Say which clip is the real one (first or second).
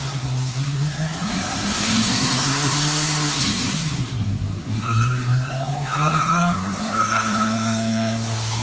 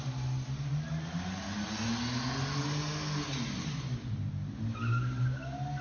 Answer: second